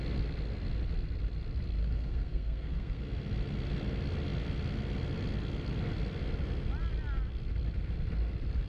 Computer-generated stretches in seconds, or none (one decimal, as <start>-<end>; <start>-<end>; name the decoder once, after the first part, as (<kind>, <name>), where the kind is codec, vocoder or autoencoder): 1.8-3.0 (codec, SNAC)